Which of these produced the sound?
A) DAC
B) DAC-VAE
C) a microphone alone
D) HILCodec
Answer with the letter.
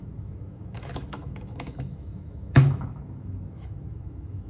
B